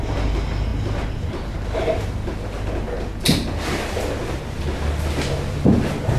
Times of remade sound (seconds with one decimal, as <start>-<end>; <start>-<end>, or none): none